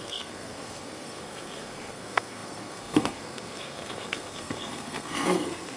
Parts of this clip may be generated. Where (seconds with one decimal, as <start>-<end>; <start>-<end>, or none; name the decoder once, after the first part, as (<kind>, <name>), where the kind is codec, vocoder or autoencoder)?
0.0-5.8 (codec, SNAC)